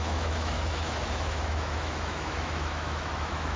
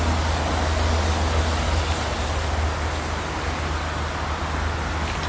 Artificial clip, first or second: first